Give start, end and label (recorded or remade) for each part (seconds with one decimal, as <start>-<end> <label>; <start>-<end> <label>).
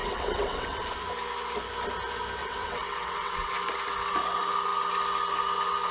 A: 0.0-0.8 remade; 0.8-2.4 recorded; 2.4-3.5 remade; 3.5-5.9 recorded